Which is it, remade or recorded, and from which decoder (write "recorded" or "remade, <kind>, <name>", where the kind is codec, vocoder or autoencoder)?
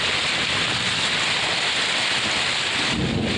recorded